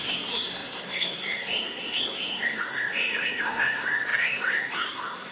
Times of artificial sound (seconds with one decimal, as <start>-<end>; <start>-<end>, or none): 0.0-5.3